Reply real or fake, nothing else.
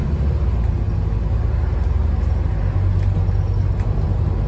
real